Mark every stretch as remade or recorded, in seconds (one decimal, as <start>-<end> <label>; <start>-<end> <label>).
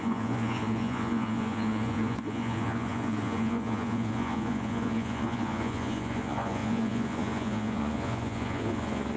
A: 0.0-9.2 remade